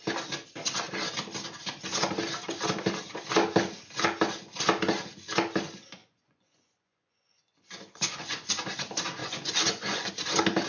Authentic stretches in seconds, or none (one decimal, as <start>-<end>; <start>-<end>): 0.0-6.0; 8.5-9.2; 10.1-10.7